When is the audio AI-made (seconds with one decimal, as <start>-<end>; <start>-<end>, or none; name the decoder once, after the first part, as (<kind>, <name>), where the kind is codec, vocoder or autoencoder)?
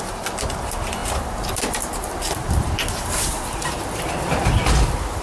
1.0-4.1 (vocoder, BigVGAN v2)